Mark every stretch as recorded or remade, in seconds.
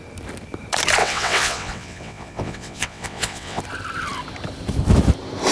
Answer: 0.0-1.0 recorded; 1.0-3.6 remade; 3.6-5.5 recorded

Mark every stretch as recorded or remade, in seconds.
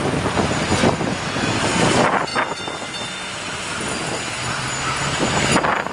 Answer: 0.0-5.9 recorded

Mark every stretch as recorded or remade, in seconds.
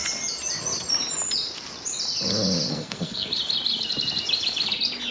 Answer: 0.0-2.7 recorded; 2.7-3.3 remade; 3.3-5.1 recorded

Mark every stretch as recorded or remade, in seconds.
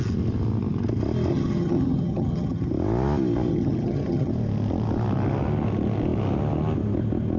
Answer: 0.0-1.3 recorded; 1.3-2.7 remade; 2.7-3.5 recorded; 3.5-4.3 remade; 4.3-7.4 recorded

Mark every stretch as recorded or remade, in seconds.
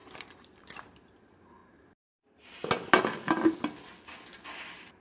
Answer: 0.0-5.0 recorded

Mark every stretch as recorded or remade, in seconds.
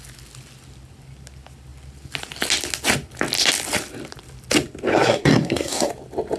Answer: 0.0-4.9 recorded; 4.9-5.9 remade; 5.9-6.4 recorded